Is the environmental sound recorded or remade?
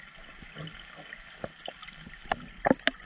recorded